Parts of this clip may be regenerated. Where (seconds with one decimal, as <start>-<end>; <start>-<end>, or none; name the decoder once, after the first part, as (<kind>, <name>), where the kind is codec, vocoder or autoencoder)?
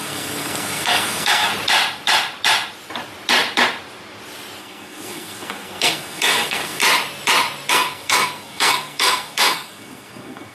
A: 0.0-1.5 (codec, SNAC); 4.6-6.8; 7.7-10.5